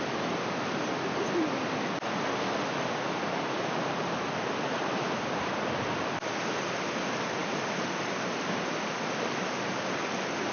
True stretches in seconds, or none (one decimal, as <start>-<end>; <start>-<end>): 0.0-10.5